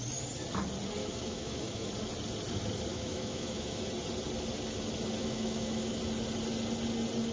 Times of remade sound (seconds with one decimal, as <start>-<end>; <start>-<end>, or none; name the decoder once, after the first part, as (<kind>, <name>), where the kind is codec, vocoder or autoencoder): 1.0-1.9 (autoencoder, DAC-VAE); 2.9-3.8; 5.2-6.0